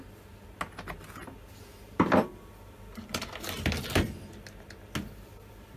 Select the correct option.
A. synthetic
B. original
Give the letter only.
B